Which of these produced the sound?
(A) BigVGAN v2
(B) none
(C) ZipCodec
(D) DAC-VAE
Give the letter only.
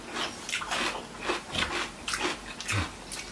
B